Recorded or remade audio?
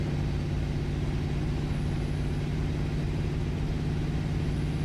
recorded